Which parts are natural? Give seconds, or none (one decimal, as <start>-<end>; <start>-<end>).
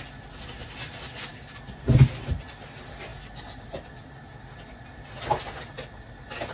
0.0-6.5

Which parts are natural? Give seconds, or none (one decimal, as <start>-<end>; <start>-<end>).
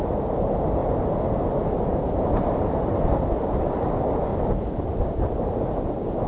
0.0-4.3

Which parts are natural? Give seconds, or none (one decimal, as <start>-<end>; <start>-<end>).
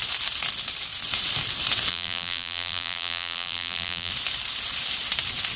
0.0-1.9; 4.1-5.6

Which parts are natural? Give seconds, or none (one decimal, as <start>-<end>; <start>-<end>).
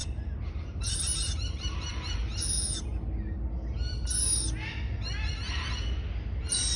0.0-0.6; 2.9-6.8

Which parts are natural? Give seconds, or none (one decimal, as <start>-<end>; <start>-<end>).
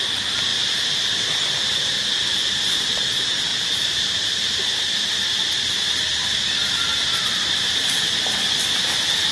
0.0-0.5; 1.8-3.5; 4.5-9.3